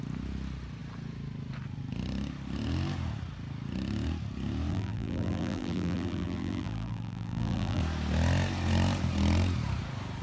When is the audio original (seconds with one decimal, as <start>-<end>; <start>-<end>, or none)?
0.0-4.7; 7.8-10.2